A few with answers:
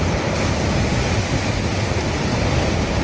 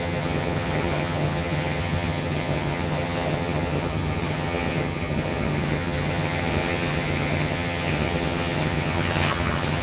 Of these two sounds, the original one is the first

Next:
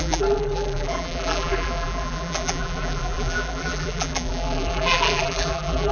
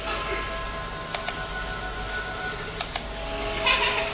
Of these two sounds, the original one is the second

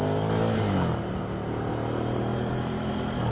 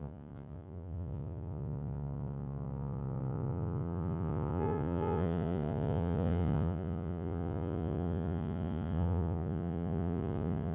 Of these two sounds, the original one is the first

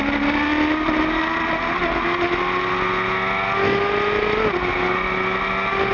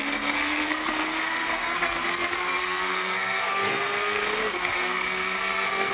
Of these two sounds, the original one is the first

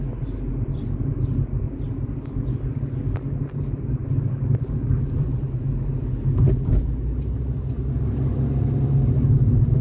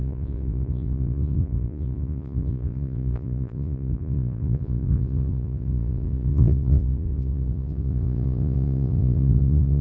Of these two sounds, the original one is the first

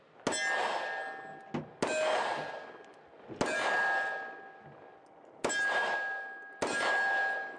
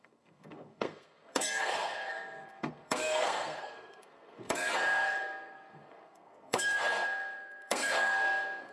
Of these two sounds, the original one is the first